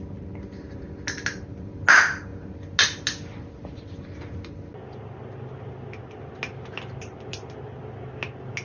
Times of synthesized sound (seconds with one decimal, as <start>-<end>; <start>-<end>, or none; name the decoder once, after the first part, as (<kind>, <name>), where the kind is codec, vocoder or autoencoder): none

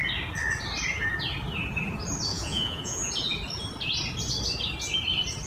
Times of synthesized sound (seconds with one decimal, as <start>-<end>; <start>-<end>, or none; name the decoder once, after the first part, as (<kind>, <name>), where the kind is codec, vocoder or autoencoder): 2.3-3.1 (vocoder, Vocos)

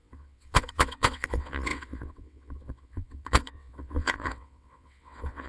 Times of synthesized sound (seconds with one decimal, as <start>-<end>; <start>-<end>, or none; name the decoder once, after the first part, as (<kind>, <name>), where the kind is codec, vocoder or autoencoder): 0.0-5.5 (vocoder, WaveNeXt)

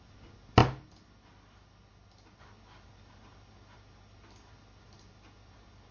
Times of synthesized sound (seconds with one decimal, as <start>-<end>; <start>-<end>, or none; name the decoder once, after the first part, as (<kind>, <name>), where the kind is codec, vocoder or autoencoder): none

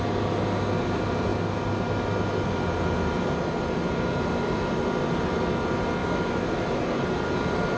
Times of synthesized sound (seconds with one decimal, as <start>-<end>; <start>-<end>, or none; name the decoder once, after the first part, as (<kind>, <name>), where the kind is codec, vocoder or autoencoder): 6.0-6.8 (autoencoder, DAC-VAE)

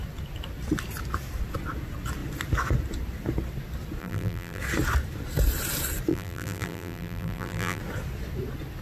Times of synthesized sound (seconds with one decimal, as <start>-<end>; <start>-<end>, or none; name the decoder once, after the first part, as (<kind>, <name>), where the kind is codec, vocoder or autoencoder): 4.0-4.6 (vocoder, BigVGAN v2); 6.1-7.8

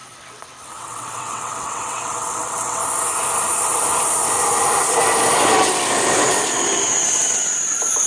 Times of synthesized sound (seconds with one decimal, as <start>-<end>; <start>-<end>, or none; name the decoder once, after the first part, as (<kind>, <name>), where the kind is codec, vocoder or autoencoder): 0.0-2.8 (vocoder, WaveNeXt)

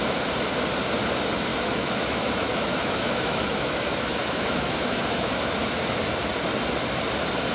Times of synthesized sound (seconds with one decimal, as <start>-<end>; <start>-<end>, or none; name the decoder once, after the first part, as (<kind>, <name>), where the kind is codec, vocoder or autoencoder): 1.5-6.0 (autoencoder, DAC-VAE)